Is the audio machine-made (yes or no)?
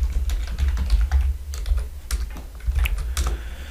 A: no